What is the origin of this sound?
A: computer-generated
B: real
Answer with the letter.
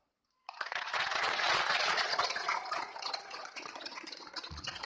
A